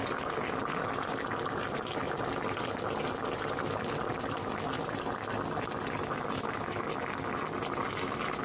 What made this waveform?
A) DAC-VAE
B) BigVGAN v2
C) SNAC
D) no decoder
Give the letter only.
D